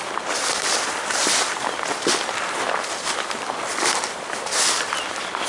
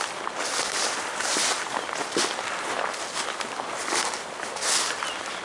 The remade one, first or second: first